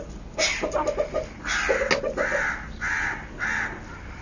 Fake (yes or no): no